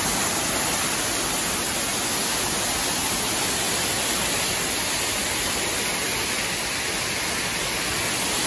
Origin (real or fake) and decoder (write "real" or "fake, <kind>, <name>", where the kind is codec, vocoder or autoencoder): real